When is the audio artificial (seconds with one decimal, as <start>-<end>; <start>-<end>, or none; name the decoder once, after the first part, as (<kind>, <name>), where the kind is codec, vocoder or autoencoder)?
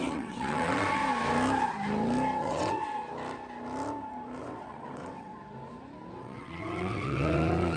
0.0-1.0 (vocoder, WaveNeXt); 2.4-3.0; 4.4-5.3; 6.2-7.8